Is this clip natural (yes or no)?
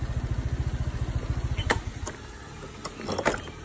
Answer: yes